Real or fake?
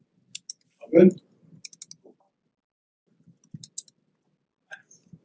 real